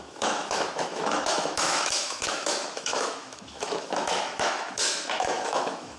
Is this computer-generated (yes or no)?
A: yes